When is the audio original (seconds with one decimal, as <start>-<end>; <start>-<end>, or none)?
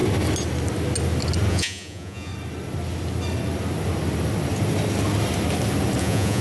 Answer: 0.0-1.5; 2.3-6.0